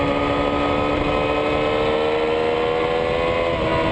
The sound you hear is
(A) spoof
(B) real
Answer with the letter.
B